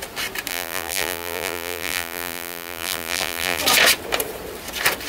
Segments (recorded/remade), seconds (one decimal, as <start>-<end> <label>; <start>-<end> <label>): 0.0-0.5 recorded; 0.5-3.6 remade; 3.6-5.1 recorded